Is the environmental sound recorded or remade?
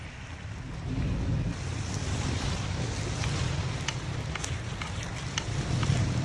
recorded